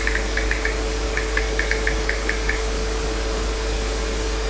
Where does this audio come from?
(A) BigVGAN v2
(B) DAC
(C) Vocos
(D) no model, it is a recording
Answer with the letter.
B